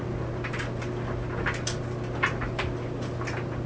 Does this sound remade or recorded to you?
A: recorded